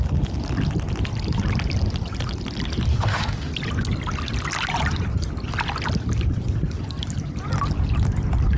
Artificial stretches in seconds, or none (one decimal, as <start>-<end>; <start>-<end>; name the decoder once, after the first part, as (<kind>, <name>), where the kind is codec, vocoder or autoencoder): 2.9-3.5 (autoencoder, DAC-VAE)